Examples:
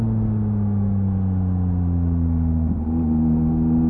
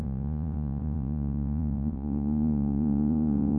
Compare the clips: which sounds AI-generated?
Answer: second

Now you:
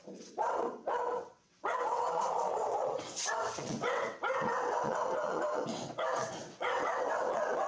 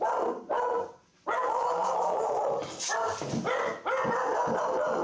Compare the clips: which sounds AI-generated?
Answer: first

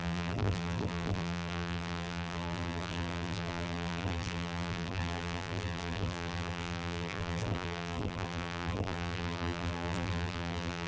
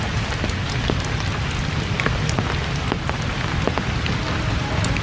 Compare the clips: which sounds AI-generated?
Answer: first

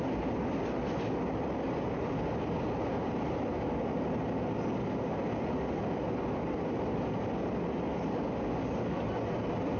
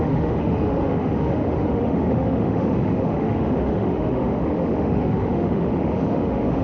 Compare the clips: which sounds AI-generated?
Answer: second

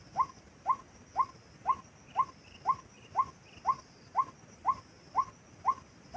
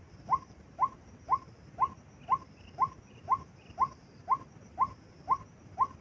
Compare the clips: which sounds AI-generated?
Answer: second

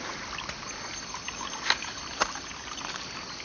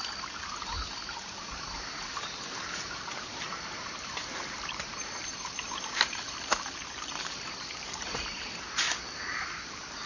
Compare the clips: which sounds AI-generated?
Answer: second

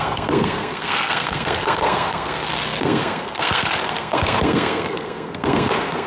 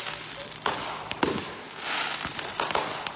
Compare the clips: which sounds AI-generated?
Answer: first